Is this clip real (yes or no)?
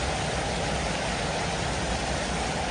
yes